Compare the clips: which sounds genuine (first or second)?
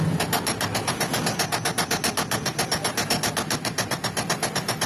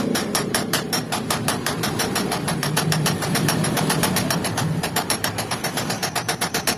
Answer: first